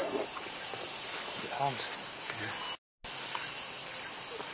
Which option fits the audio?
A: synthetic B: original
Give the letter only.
B